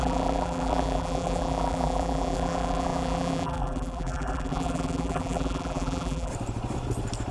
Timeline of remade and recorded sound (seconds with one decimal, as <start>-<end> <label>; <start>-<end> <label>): 0.0-6.3 remade; 6.3-7.3 recorded